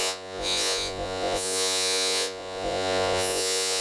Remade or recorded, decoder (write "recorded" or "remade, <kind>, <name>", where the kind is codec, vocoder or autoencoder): remade, vocoder, Vocos